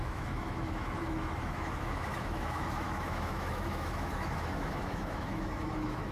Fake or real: fake